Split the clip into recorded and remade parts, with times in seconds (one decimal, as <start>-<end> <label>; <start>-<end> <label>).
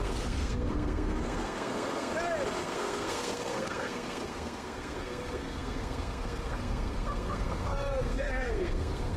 0.0-2.1 remade; 2.1-2.6 recorded; 2.6-9.2 remade